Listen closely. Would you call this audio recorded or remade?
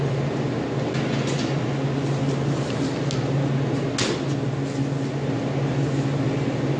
recorded